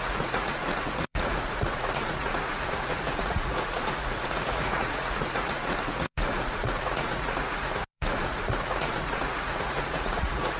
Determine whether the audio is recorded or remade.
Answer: remade